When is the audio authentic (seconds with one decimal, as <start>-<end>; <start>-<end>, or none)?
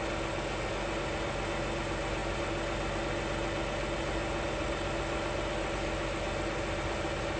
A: 0.0-7.4